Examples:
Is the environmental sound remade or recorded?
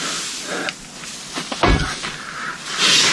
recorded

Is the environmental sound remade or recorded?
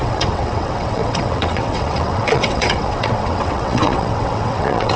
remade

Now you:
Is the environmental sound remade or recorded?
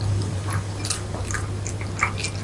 recorded